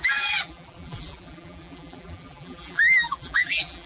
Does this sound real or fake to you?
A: fake